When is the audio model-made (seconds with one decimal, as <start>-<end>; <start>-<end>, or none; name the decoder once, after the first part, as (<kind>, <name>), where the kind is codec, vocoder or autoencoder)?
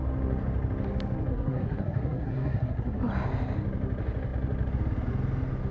1.3-3.0 (codec, SNAC)